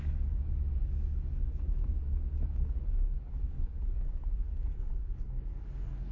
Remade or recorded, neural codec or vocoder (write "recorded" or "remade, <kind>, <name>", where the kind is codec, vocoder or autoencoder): remade, codec, DAC